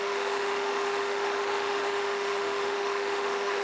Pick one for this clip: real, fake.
fake